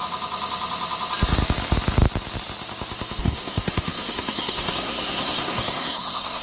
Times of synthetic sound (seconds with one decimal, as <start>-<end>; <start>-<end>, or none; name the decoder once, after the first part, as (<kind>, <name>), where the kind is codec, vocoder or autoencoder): 3.2-6.4 (codec, SNAC)